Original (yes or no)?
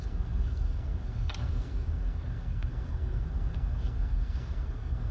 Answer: no